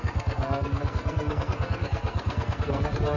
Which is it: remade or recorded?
remade